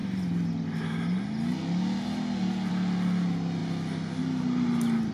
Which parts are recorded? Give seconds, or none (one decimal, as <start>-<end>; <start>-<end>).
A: 0.0-5.1